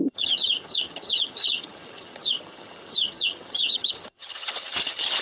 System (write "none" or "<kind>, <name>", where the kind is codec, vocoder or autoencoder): vocoder, HiFi-GAN